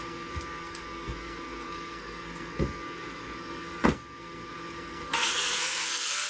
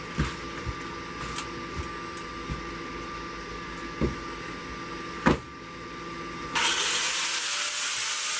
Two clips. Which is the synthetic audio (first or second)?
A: first